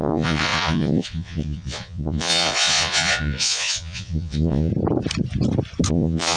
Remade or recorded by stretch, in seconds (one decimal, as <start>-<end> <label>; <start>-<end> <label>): 0.0-4.7 remade; 4.7-5.9 recorded; 5.9-6.4 remade